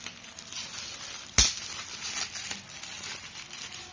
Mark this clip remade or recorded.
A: recorded